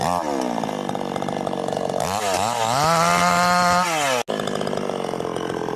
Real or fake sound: real